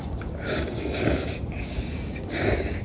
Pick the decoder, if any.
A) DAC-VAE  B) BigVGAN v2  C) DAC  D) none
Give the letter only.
C